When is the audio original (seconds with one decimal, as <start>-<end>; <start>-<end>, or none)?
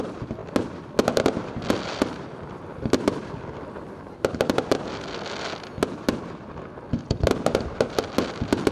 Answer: 0.0-8.7